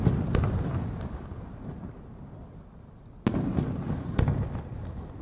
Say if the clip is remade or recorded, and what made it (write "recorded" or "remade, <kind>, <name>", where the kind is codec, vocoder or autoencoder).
recorded